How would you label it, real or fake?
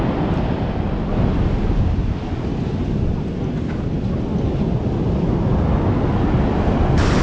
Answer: real